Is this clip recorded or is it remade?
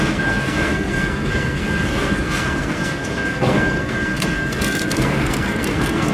remade